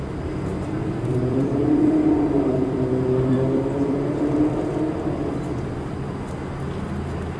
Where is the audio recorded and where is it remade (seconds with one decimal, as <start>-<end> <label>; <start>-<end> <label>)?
0.0-0.5 recorded; 0.5-4.9 remade; 4.9-7.4 recorded